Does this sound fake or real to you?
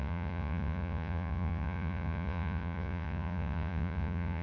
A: fake